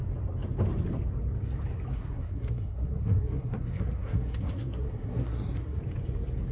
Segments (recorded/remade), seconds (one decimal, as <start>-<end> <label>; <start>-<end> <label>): 0.0-1.9 recorded; 1.9-5.8 remade; 5.8-6.5 recorded